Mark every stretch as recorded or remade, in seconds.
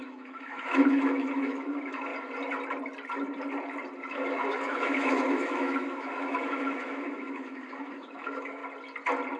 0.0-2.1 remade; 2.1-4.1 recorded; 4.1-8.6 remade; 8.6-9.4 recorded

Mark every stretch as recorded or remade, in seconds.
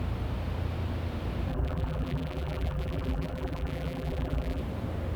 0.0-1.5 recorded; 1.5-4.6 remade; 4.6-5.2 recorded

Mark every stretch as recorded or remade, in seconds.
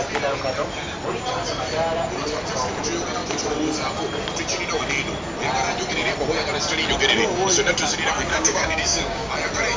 0.0-8.3 recorded; 8.3-9.3 remade; 9.3-9.8 recorded